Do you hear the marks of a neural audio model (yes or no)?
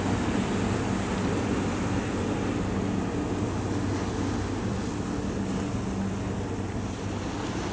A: no